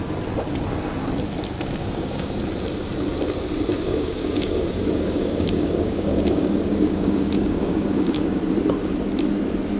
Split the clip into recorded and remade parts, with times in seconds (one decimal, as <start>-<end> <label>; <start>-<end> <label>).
0.0-1.8 recorded; 1.8-2.4 remade; 2.4-3.7 recorded; 3.7-8.4 remade; 8.4-9.8 recorded

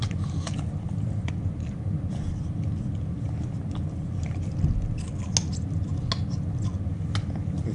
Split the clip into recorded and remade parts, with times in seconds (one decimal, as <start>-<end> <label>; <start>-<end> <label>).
0.0-7.7 recorded

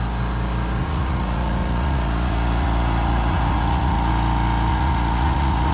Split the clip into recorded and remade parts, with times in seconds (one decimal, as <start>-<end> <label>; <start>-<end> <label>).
0.0-0.8 recorded; 0.8-4.1 remade; 4.1-4.7 recorded; 4.7-5.7 remade

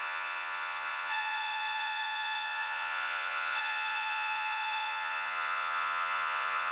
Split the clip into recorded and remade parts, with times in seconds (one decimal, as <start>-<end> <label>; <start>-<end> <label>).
0.0-6.7 remade

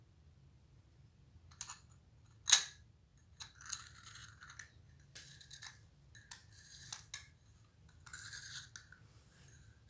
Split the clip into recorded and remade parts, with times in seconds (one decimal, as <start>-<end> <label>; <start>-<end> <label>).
0.0-9.9 recorded

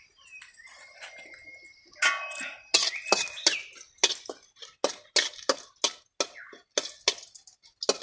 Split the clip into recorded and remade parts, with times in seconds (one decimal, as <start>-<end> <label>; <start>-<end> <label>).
0.0-8.0 recorded

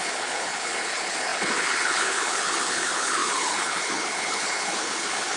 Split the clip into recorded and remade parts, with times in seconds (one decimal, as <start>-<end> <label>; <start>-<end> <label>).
0.0-5.4 remade

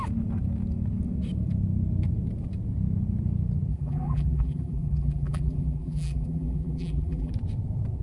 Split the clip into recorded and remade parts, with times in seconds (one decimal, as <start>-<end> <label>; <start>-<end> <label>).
0.0-3.7 recorded; 3.7-7.3 remade; 7.3-8.0 recorded